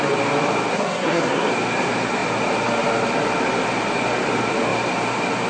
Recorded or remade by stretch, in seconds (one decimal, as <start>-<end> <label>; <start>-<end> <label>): 0.0-0.7 recorded; 0.7-1.5 remade; 1.5-5.5 recorded